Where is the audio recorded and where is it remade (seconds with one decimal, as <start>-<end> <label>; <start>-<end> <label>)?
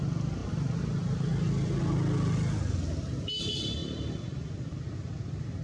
0.0-5.6 recorded